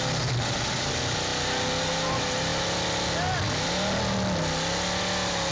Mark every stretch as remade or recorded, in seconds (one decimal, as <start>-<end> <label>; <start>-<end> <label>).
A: 0.0-5.5 recorded